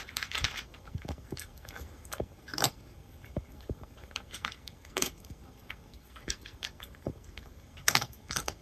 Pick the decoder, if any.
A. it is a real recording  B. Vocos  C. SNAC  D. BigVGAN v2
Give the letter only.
C